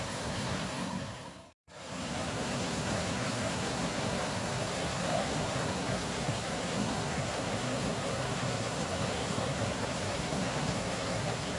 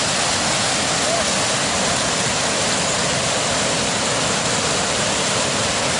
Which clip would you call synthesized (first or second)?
first